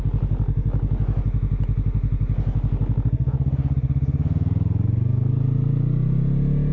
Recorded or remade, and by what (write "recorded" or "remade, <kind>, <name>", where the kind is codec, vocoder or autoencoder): recorded